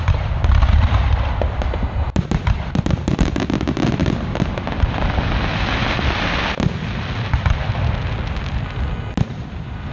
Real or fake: real